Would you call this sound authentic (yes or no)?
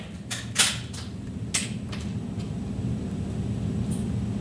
yes